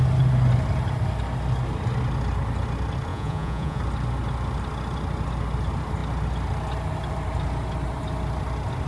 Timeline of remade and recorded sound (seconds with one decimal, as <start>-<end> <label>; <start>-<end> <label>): 0.0-3.1 recorded; 3.1-3.8 remade; 3.8-8.9 recorded